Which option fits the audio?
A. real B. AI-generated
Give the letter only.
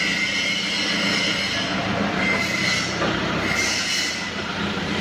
A